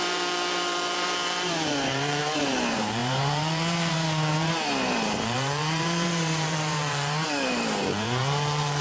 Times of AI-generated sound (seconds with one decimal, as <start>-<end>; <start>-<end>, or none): 0.0-8.8